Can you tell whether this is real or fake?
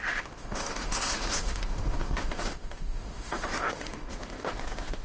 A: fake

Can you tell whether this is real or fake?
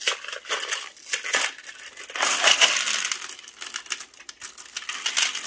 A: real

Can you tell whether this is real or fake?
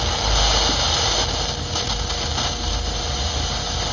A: real